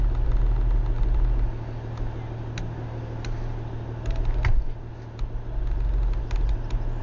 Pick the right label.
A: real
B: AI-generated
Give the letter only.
A